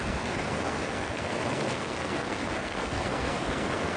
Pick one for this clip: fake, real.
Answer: fake